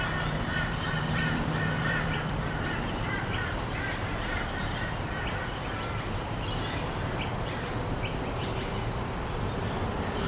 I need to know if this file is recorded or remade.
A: remade